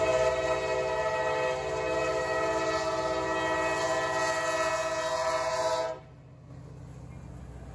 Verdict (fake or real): real